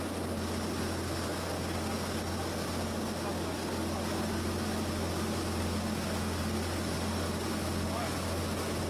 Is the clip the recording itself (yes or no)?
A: yes